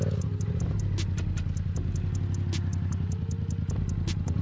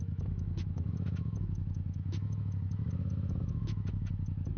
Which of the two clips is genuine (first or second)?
first